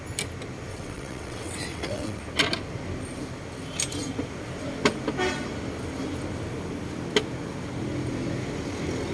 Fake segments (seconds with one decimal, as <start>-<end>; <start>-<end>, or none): 0.7-2.2